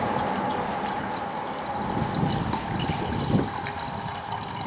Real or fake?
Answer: real